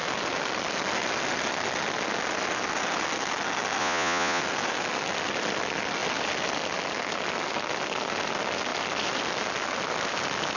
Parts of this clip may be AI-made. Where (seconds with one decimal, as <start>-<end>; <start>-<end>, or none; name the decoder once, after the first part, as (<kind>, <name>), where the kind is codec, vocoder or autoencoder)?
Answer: 3.8-4.4 (vocoder, Vocos)